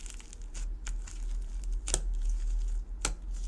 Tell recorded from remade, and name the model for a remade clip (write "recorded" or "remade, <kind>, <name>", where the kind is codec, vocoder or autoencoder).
recorded